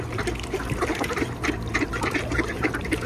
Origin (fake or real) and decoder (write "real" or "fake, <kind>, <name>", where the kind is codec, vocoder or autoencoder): fake, vocoder, BigVGAN v2